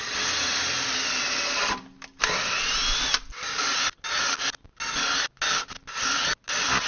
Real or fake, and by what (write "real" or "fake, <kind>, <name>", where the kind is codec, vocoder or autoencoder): real